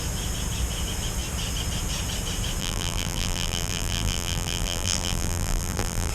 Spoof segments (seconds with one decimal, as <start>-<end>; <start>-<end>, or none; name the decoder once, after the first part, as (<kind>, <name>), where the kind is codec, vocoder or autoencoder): 2.6-6.1 (vocoder, BigVGAN v2)